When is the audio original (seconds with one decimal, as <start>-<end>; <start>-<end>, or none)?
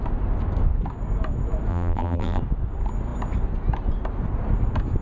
0.0-1.7; 2.4-5.0